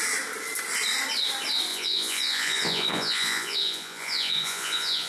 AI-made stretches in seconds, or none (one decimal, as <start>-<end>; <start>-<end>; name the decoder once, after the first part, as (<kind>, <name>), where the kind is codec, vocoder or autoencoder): 1.7-5.1 (vocoder, Vocos)